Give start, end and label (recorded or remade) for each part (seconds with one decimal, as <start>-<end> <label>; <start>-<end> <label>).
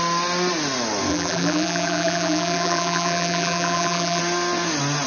0.0-1.1 recorded; 1.1-4.2 remade; 4.2-5.1 recorded